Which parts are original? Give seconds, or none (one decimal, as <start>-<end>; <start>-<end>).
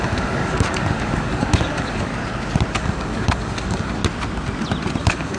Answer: 2.1-2.7; 4.0-5.0